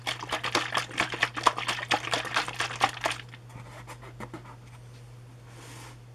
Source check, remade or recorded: recorded